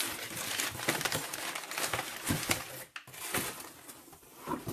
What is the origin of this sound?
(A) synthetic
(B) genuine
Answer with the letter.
B